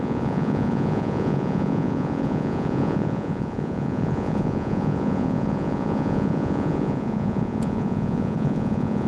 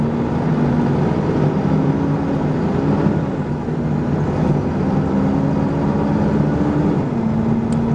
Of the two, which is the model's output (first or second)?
first